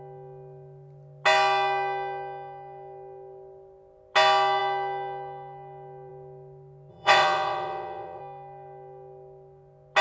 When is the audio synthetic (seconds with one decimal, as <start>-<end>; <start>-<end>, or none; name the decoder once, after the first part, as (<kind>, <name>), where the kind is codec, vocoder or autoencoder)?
6.9-8.2 (vocoder, WaveNeXt)